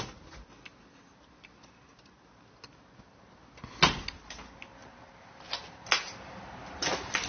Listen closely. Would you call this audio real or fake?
real